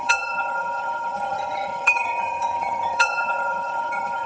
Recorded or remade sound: remade